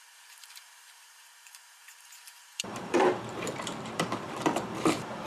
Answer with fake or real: fake